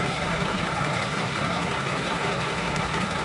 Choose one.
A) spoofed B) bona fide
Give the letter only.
A